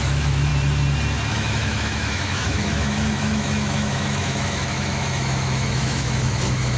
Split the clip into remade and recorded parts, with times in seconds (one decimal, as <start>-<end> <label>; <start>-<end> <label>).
0.0-0.5 remade; 0.5-1.3 recorded; 1.3-6.8 remade